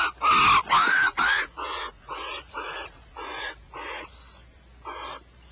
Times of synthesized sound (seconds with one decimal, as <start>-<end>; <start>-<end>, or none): 0.8-4.1